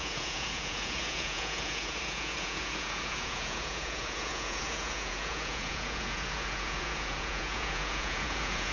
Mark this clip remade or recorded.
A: remade